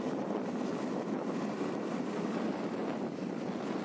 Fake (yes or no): no